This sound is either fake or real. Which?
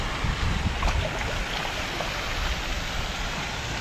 real